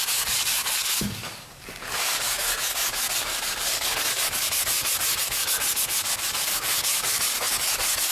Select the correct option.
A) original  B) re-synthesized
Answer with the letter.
B